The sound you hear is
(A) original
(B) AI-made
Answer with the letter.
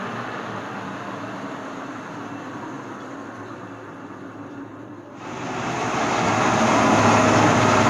A